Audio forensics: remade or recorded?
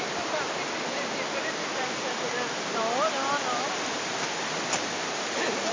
recorded